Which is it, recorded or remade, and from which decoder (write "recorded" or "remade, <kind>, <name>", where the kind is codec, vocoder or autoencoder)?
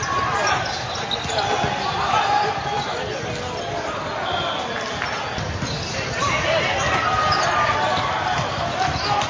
recorded